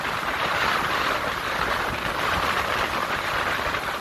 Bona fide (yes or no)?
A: yes